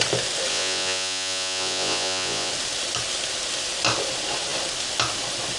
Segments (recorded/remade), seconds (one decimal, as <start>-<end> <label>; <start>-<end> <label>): 0.0-0.5 recorded; 0.5-2.5 remade; 2.5-5.6 recorded